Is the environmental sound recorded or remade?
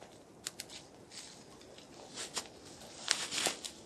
recorded